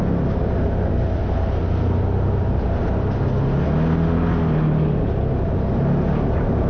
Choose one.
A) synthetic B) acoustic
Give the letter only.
B